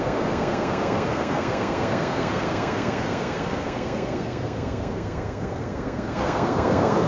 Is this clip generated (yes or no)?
yes